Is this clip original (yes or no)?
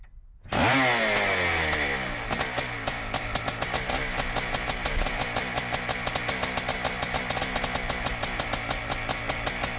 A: yes